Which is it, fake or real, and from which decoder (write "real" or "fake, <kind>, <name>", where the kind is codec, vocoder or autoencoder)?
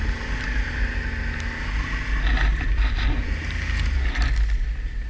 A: real